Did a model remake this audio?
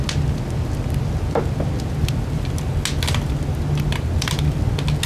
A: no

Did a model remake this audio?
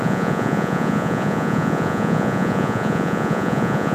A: yes